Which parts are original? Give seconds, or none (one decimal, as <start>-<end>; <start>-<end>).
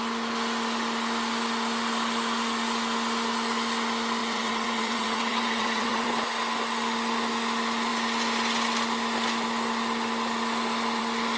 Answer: 0.0-4.2; 6.2-11.4